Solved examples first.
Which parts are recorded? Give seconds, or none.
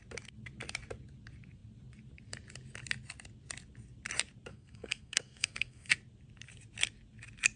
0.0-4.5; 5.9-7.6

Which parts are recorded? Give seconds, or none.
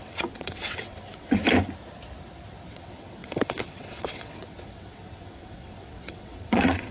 1.4-2.7